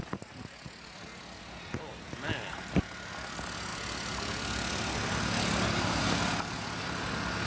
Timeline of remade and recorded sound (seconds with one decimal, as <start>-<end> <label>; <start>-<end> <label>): 0.0-7.5 recorded